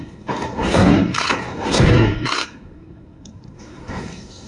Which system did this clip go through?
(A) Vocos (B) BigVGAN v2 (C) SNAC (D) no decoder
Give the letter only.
C